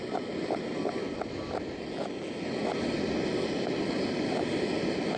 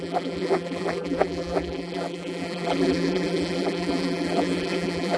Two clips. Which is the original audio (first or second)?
first